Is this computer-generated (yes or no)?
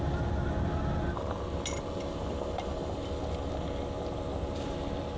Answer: no